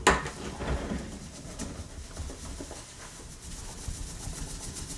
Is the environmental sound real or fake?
real